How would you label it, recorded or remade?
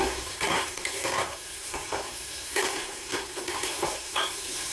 remade